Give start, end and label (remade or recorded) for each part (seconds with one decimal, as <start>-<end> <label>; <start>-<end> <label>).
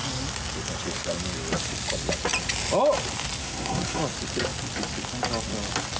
0.0-3.4 recorded; 3.4-4.0 remade; 4.0-6.0 recorded